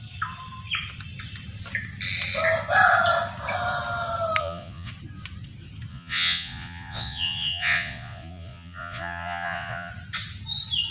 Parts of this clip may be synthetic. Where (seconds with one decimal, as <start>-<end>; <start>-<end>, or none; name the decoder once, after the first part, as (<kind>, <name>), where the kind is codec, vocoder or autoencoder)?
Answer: 4.4-4.9 (vocoder, Vocos); 5.9-9.9